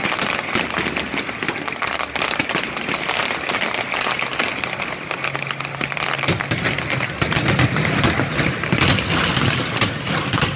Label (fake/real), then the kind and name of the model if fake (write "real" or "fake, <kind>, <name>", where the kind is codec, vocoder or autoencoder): real